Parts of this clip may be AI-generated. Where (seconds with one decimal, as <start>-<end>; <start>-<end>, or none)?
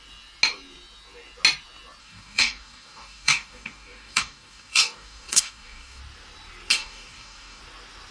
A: 2.0-6.0; 6.7-7.6